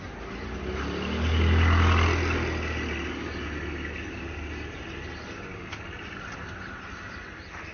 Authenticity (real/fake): real